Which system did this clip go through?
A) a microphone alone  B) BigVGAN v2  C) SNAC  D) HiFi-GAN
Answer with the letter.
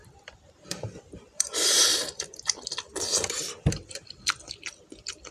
B